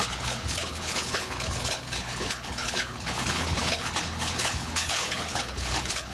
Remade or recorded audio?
remade